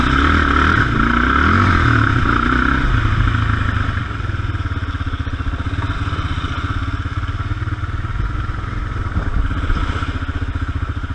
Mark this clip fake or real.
real